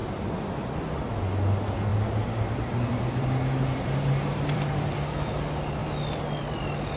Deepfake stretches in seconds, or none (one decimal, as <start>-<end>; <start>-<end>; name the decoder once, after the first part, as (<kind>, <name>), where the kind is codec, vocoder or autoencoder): 1.9-4.9 (vocoder, BigVGAN v2)